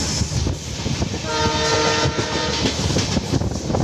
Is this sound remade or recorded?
recorded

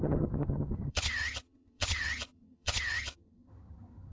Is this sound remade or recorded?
remade